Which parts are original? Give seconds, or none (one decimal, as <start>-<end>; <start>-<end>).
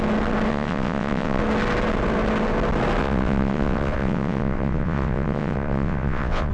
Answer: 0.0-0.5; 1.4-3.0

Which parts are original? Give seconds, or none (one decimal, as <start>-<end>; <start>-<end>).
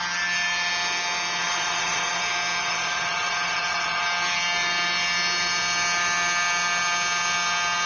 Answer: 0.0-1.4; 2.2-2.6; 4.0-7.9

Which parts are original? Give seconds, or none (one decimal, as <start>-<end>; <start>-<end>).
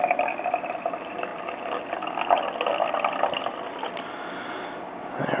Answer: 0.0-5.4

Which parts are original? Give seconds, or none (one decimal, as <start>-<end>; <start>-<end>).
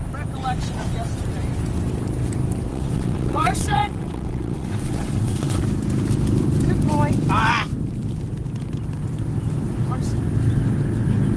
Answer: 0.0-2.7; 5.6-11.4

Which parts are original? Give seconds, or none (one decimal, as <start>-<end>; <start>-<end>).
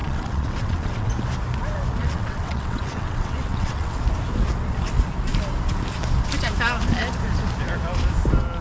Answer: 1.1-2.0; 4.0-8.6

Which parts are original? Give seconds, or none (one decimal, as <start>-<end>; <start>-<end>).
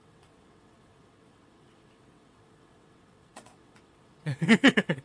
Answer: none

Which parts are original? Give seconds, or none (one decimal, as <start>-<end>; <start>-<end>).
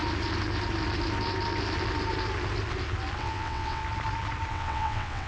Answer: 0.0-3.2; 3.8-4.5